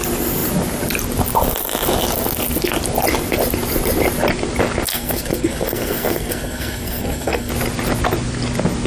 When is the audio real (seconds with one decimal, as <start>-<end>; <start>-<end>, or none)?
0.0-4.9; 7.5-8.9